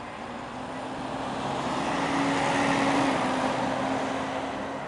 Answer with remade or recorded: recorded